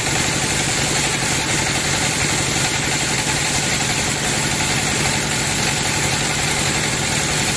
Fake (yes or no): no